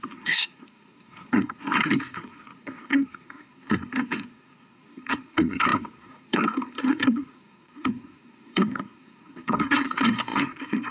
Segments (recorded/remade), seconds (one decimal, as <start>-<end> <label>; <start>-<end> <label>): 0.0-10.9 remade